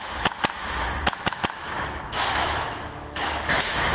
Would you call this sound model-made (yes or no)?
yes